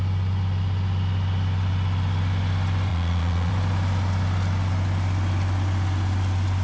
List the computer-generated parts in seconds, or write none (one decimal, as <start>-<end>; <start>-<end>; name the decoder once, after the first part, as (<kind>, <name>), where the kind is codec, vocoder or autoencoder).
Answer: 2.9-3.5 (vocoder, Vocos)